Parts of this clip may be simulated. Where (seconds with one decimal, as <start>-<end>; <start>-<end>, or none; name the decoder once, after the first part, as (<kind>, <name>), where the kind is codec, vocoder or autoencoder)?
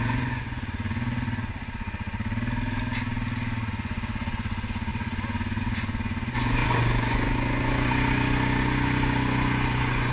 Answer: 0.0-1.5 (vocoder, Vocos); 3.7-10.1